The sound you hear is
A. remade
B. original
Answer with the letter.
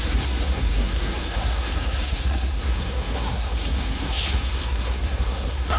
A